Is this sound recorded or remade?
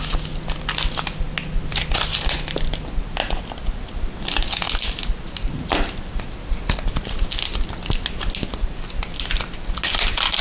recorded